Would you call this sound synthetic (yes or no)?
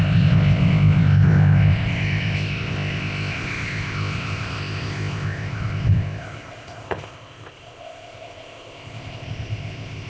yes